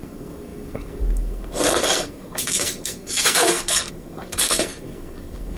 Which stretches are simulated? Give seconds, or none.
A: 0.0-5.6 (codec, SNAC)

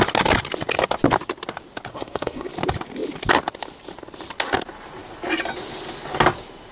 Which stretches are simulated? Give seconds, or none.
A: 1.9-2.5 (codec, SNAC)

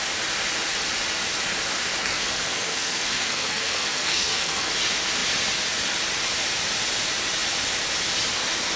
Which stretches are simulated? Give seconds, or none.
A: 2.0-4.7 (codec, SNAC)